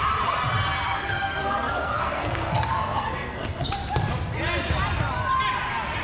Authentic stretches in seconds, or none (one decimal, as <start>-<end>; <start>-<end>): 0.0-0.9; 3.7-6.0